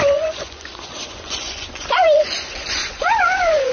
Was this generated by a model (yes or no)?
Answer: yes